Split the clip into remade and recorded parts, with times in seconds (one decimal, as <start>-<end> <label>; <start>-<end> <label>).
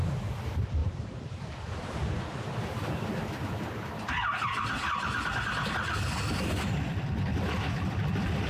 0.0-0.8 recorded; 0.8-4.1 remade; 4.1-8.5 recorded